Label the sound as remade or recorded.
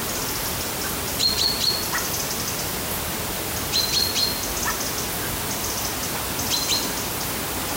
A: recorded